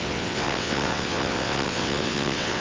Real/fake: fake